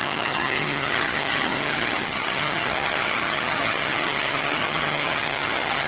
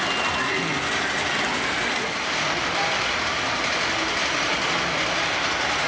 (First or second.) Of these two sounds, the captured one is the second